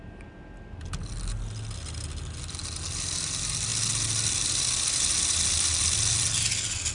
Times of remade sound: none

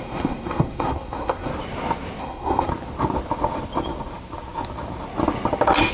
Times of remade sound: 0.0-1.5; 2.2-2.7

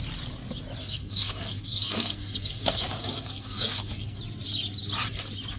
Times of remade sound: 0.8-4.2

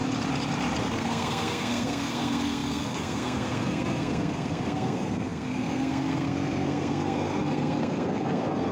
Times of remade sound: 0.8-8.7